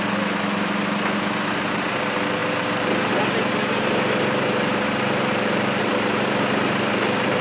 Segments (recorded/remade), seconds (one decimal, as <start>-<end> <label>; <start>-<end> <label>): 0.0-7.4 recorded